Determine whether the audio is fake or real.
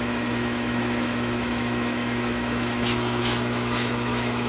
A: fake